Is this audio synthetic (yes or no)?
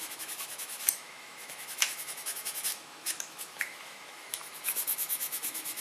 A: yes